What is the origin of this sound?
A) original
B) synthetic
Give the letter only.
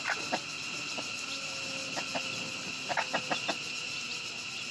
A